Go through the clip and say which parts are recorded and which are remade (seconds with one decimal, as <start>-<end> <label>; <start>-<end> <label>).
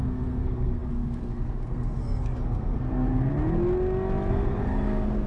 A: 0.0-3.3 remade; 3.3-4.3 recorded; 4.3-5.3 remade